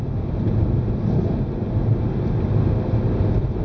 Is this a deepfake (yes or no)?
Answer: no